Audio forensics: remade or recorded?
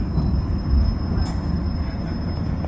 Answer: recorded